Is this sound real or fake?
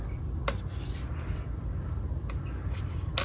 real